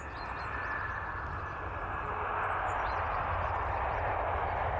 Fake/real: real